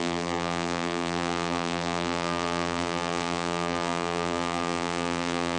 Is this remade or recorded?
remade